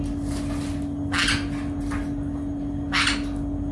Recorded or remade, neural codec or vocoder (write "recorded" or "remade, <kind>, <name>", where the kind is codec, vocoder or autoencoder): recorded